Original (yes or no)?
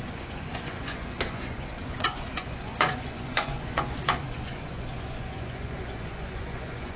no